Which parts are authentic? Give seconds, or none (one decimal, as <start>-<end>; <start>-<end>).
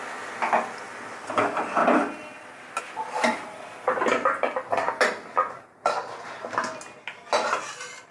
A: 0.0-8.1